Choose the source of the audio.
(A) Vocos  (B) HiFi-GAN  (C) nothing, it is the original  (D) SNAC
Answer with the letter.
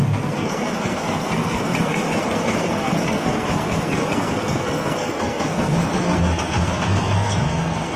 D